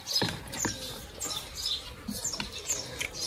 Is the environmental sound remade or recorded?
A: recorded